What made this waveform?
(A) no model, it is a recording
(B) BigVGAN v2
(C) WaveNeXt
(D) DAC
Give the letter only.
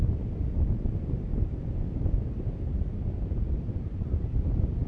A